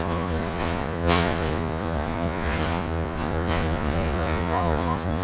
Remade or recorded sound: remade